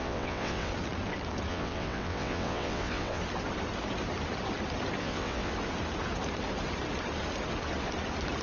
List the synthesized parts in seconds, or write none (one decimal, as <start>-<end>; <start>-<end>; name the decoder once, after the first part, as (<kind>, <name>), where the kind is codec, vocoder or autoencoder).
0.0-0.7 (vocoder, WaveNeXt); 1.5-3.2; 5.0-5.5